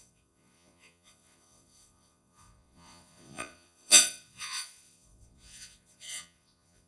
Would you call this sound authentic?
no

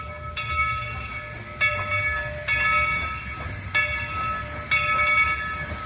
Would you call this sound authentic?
yes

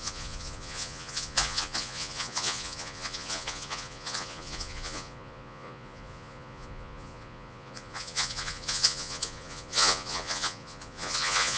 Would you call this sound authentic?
no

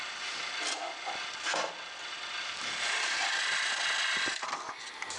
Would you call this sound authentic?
yes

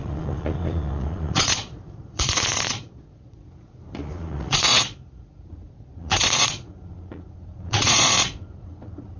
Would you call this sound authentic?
no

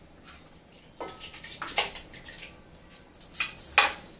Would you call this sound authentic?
yes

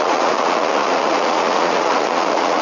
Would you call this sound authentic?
no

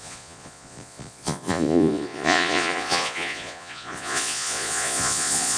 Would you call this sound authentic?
no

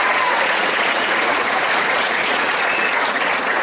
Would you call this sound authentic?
no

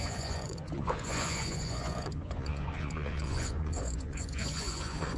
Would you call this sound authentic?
no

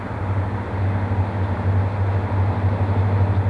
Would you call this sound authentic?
yes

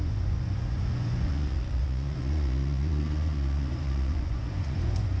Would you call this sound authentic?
no